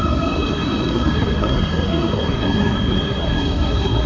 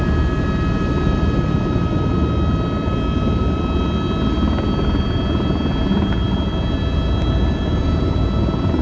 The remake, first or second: first